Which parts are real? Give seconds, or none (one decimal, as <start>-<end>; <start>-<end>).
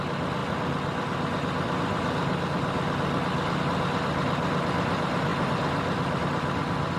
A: 0.0-7.0